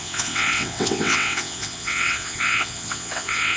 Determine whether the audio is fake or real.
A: fake